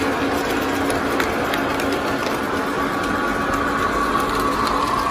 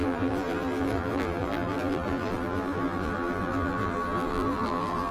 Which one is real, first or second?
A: first